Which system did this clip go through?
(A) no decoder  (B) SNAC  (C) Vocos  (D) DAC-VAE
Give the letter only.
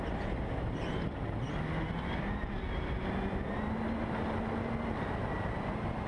A